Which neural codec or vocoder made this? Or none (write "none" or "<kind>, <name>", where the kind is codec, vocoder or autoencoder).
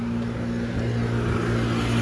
none